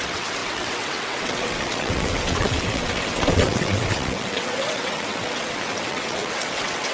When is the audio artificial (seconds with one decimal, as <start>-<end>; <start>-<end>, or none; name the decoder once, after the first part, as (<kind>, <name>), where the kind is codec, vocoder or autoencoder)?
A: 0.0-6.9 (vocoder, WaveNeXt)